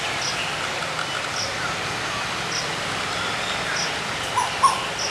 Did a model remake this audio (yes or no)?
no